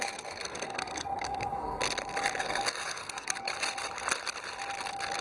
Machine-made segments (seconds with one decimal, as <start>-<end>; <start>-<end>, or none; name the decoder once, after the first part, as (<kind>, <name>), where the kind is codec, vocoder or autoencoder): 0.0-1.8 (codec, SNAC); 2.4-3.5